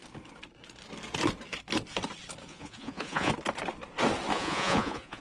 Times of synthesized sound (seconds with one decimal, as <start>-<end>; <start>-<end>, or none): 2.5-3.3; 4.3-5.2